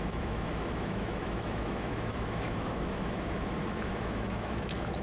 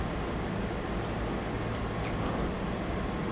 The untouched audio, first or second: second